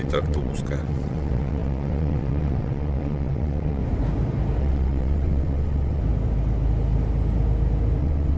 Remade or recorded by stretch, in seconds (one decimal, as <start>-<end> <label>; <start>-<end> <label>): 0.0-3.8 remade; 3.8-4.6 recorded; 4.6-6.0 remade; 6.0-8.0 recorded; 8.0-8.4 remade